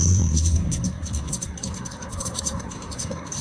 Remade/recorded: remade